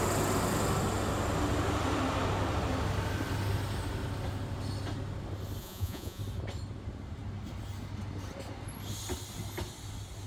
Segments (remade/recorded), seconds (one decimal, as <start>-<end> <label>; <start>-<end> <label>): 0.0-5.6 recorded; 5.6-6.2 remade; 6.2-10.3 recorded